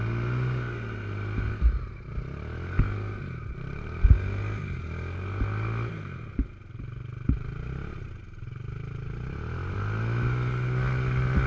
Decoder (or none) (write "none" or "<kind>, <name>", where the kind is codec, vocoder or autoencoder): none